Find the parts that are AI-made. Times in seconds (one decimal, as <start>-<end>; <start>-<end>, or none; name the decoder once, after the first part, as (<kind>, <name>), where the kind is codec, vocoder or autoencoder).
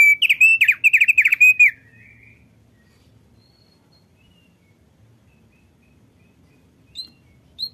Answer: none